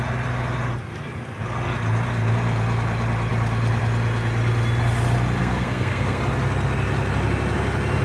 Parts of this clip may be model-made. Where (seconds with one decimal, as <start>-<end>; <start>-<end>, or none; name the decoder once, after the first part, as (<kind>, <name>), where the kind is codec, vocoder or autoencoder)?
5.4-6.2 (codec, SNAC)